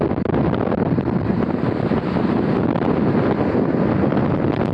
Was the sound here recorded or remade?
recorded